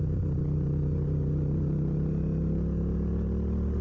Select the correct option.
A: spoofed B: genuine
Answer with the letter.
B